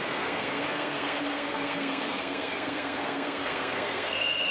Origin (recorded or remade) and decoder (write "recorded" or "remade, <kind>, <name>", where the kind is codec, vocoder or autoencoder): remade, codec, SNAC